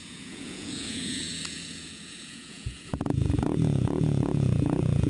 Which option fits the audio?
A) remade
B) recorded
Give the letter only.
A